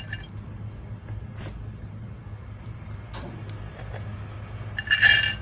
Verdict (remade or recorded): recorded